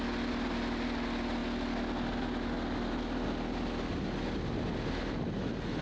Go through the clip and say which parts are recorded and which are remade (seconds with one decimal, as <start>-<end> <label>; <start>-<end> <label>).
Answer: 0.0-5.8 recorded